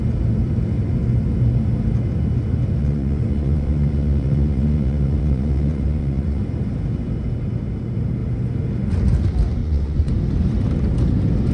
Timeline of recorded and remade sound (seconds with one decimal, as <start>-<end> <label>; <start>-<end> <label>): 0.0-2.8 recorded; 2.8-6.4 remade; 6.4-9.6 recorded; 9.6-10.1 remade; 10.1-11.5 recorded